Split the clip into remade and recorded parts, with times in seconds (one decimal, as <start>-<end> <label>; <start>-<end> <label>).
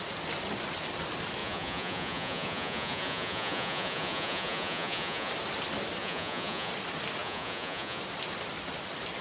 0.0-1.4 recorded; 1.4-5.3 remade; 5.3-6.0 recorded; 6.0-6.7 remade; 6.7-7.2 recorded; 7.2-8.0 remade; 8.0-9.2 recorded